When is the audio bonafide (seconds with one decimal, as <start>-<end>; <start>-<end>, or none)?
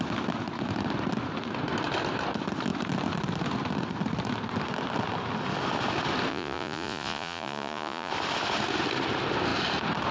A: 0.0-6.3; 8.1-10.1